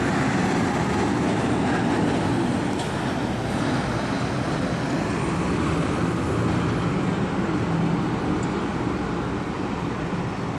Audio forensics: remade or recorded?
recorded